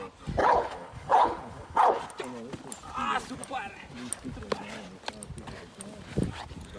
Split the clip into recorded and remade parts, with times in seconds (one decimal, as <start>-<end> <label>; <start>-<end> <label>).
0.0-0.4 recorded; 0.4-2.0 remade; 2.0-6.8 recorded